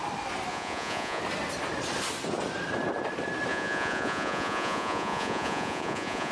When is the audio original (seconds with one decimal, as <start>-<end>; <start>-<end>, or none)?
0.0-0.5; 1.2-3.5